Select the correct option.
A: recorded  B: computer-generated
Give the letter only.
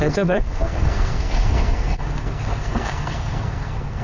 B